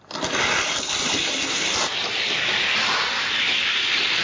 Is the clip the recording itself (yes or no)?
no